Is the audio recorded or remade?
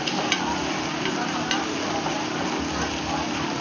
recorded